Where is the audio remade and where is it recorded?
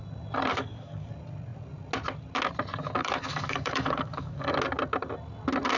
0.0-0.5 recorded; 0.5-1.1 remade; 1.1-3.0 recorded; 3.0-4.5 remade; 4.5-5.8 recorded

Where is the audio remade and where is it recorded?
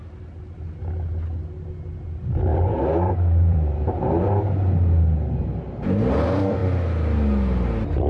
0.0-2.5 recorded; 2.5-4.4 remade; 4.4-8.1 recorded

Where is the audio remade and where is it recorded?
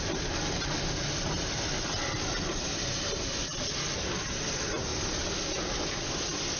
0.0-6.6 recorded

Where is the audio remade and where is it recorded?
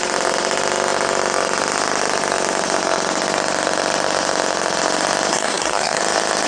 0.0-5.3 recorded; 5.3-6.0 remade; 6.0-6.5 recorded